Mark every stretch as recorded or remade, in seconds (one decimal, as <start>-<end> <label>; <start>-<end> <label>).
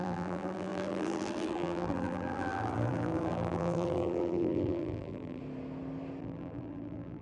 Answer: 0.0-5.4 remade; 5.4-6.2 recorded; 6.2-7.2 remade